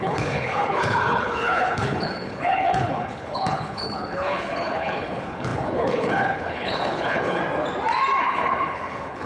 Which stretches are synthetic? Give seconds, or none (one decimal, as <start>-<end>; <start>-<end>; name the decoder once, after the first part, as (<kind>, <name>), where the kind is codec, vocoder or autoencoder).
0.0-7.4 (codec, HILCodec); 8.2-9.3